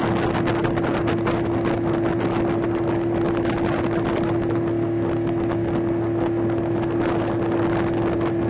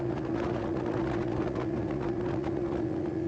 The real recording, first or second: first